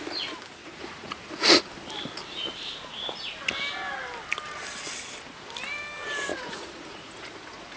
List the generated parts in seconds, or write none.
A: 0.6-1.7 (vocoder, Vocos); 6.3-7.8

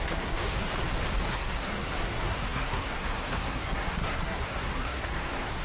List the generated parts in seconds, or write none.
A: 0.0-0.7 (codec, SNAC); 1.3-5.6

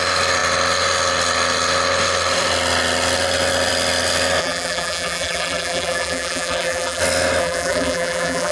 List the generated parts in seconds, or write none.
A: 4.4-7.0 (vocoder, BigVGAN v2); 7.4-8.5

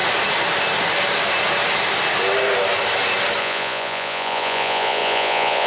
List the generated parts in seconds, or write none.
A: 3.4-5.7 (vocoder, Vocos)

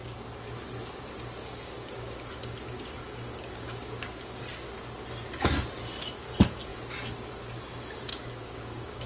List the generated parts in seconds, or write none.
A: 1.4-4.4 (codec, DAC); 8.1-9.1

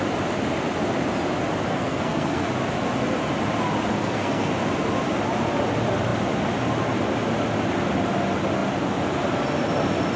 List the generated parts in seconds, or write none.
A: 1.7-2.5 (codec, SNAC); 3.9-4.5

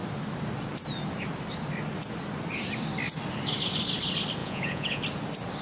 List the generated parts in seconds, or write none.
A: 4.4-5.0 (vocoder, Vocos)